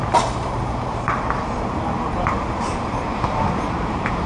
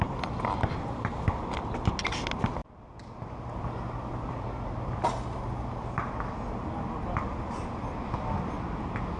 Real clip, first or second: second